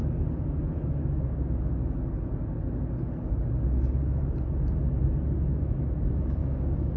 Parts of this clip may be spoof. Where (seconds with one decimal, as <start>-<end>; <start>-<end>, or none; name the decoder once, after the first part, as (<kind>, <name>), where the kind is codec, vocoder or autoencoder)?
6.4-7.0 (codec, DAC)